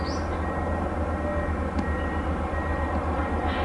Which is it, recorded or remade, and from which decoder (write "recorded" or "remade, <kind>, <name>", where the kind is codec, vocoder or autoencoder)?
recorded